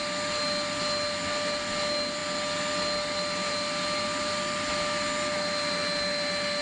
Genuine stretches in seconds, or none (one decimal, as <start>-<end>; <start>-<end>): 0.0-6.6